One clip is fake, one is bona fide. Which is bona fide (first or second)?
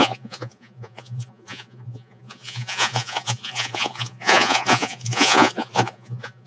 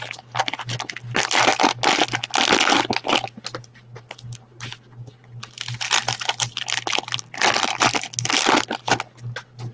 second